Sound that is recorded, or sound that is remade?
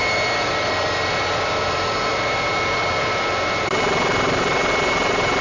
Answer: recorded